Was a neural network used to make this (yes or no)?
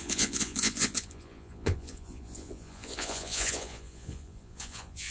yes